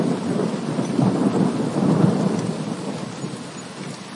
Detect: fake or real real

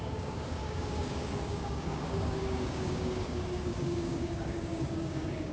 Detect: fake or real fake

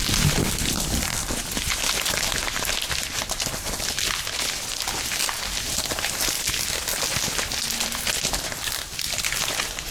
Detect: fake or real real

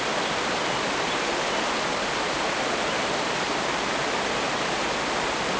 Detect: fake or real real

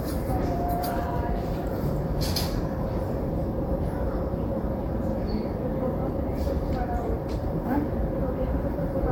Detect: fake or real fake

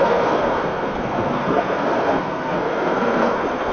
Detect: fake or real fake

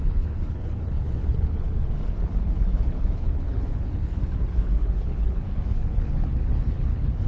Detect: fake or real fake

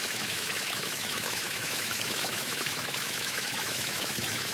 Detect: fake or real fake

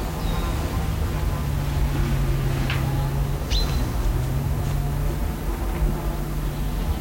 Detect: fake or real real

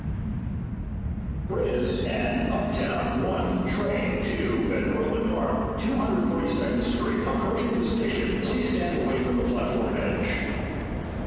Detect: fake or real real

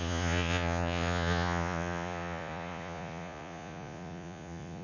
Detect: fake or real fake